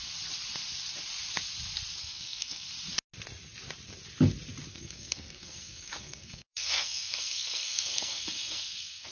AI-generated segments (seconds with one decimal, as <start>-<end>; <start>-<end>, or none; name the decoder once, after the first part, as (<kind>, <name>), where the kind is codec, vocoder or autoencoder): 2.0-2.7 (codec, SNAC); 4.7-9.1